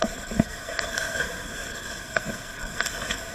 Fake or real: fake